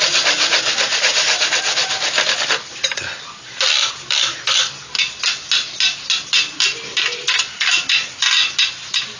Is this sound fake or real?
real